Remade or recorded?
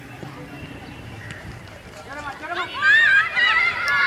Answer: remade